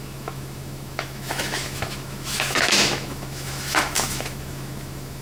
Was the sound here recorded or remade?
remade